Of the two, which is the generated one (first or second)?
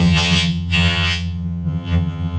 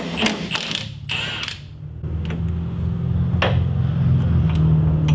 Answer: first